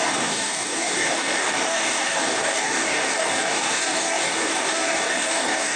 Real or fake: fake